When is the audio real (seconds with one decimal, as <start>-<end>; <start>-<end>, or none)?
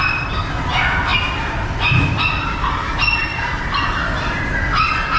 0.0-5.2